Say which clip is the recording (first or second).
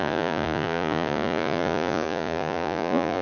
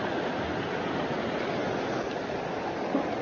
second